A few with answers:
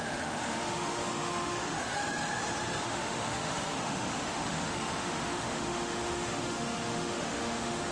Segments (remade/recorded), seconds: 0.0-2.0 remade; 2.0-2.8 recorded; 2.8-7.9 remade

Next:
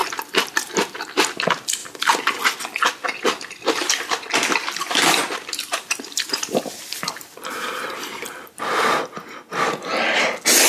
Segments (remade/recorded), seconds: 0.0-1.4 remade; 1.4-1.8 recorded; 1.8-2.4 remade; 2.4-3.0 recorded; 3.0-7.1 remade; 7.1-10.7 recorded

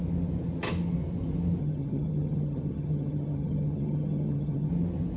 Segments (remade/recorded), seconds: 0.0-1.6 recorded; 1.6-4.7 remade; 4.7-5.2 recorded

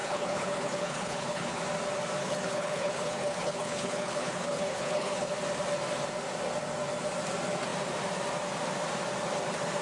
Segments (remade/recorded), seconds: 0.0-1.6 remade; 1.6-2.2 recorded; 2.2-5.3 remade; 5.3-9.8 recorded

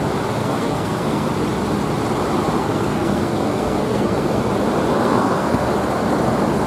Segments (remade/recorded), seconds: 0.0-0.4 recorded; 0.4-1.3 remade; 1.3-2.6 recorded; 2.6-4.5 remade; 4.5-5.0 recorded; 5.0-5.7 remade; 5.7-6.7 recorded

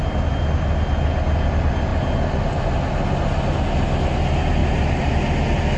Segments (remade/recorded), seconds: 0.0-4.6 recorded; 4.6-5.1 remade; 5.1-5.8 recorded